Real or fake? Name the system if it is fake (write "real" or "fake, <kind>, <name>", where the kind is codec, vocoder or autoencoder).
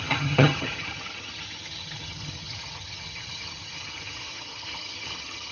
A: fake, vocoder, HiFi-GAN